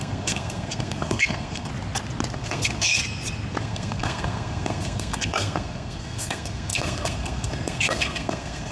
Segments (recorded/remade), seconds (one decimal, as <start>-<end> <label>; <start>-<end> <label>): 0.0-1.7 remade; 1.7-2.3 recorded; 2.3-3.0 remade; 3.0-3.6 recorded; 3.6-8.7 remade